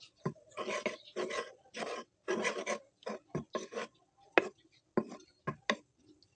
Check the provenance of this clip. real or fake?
real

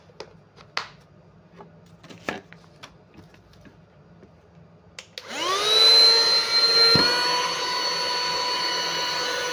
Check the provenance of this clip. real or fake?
real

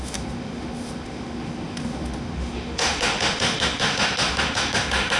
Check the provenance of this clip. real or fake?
fake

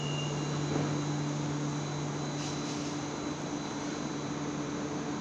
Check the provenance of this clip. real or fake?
real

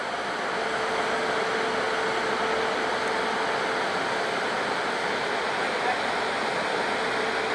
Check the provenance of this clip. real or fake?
real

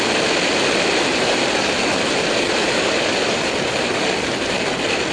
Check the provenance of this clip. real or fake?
real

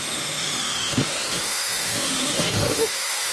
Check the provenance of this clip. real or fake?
fake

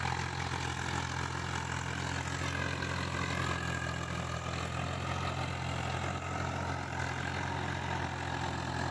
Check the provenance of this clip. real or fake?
real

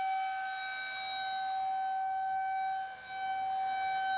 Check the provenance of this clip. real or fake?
real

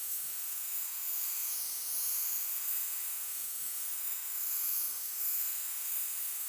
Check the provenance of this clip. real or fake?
fake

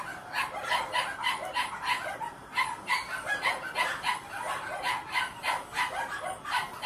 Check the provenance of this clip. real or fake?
real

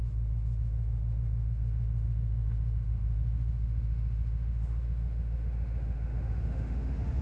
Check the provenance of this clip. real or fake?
fake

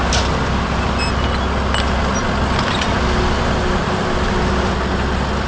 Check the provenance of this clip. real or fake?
real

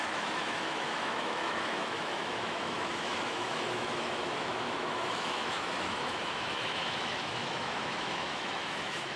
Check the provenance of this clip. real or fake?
fake